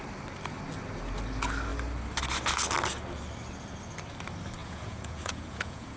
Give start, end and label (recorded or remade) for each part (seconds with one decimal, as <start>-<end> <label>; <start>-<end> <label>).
0.0-4.6 recorded; 4.6-6.0 remade